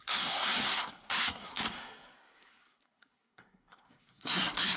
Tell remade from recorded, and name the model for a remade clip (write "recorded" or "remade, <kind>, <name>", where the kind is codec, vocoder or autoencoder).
remade, codec, SNAC